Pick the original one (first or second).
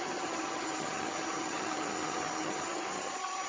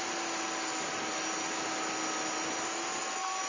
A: second